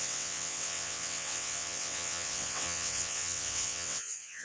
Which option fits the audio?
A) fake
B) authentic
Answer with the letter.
A